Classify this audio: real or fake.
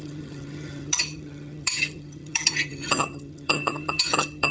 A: fake